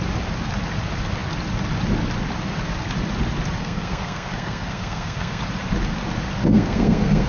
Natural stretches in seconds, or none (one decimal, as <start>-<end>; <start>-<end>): 0.0-3.6; 5.4-6.4